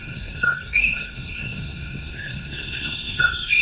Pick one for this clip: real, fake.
fake